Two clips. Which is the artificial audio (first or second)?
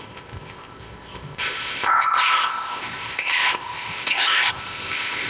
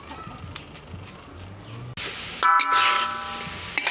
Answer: first